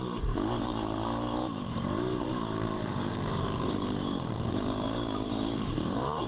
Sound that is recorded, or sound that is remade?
remade